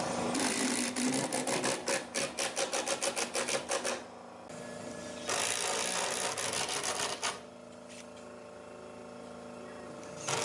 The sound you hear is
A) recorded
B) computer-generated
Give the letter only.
A